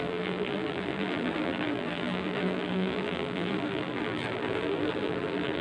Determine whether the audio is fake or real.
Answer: fake